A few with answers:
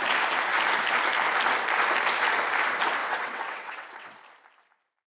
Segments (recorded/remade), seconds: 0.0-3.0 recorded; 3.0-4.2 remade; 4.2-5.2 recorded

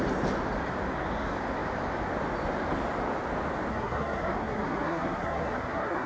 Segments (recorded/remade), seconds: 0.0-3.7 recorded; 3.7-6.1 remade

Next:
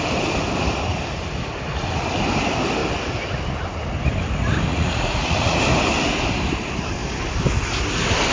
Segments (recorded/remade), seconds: 0.0-4.7 recorded; 4.7-5.6 remade; 5.6-8.3 recorded

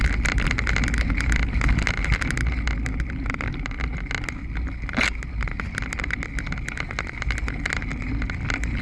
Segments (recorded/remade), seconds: 0.0-2.9 recorded; 2.9-3.5 remade; 3.5-7.9 recorded; 7.9-8.8 remade

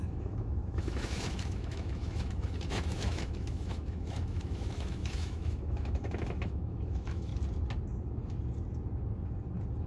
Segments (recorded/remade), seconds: 0.0-7.3 remade; 7.3-9.9 recorded